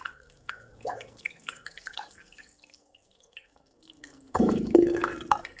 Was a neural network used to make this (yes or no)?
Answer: yes